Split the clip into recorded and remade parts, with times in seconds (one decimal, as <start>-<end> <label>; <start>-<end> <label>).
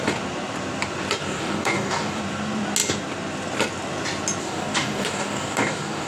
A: 0.0-1.2 recorded; 1.2-2.2 remade; 2.2-4.4 recorded; 4.4-6.1 remade